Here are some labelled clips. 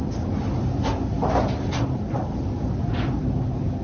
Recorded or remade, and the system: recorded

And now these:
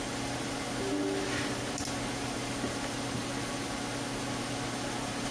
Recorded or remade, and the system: recorded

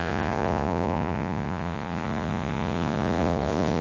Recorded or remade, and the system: remade, vocoder, Vocos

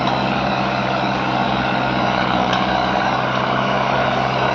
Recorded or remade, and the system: remade, codec, DAC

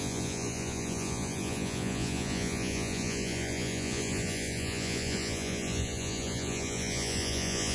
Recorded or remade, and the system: remade, vocoder, Vocos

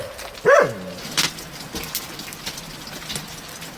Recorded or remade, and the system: recorded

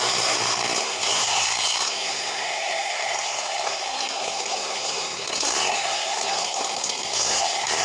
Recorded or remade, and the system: remade, codec, SNAC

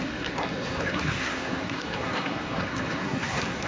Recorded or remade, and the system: remade, codec, SNAC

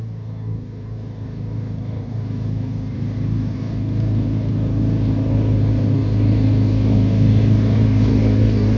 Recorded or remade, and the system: remade, codec, DAC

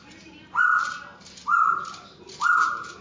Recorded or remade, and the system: recorded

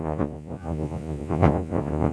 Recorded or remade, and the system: remade, vocoder, Vocos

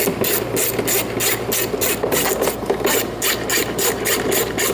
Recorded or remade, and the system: recorded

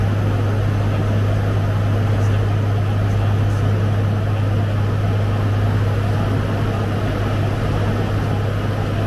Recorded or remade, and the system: recorded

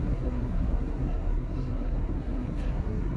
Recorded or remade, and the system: remade, codec, SNAC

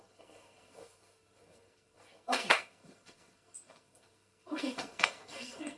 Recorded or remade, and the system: remade, codec, SNAC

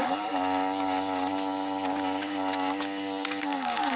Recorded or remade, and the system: remade, codec, DAC